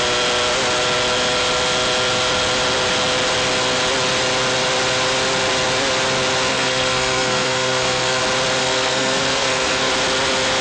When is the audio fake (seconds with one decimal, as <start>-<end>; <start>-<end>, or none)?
6.5-8.2; 8.6-9.9